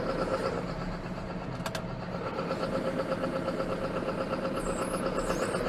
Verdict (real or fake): real